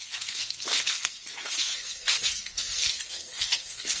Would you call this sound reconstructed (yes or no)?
yes